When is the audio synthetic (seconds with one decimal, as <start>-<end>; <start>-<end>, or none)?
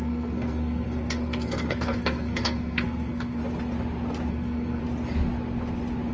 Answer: 0.0-3.4; 4.3-4.8